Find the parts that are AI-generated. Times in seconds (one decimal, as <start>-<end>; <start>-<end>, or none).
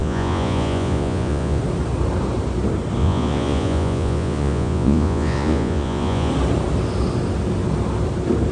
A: 0.0-1.6; 3.0-6.3